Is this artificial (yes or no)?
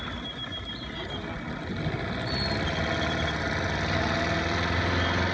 no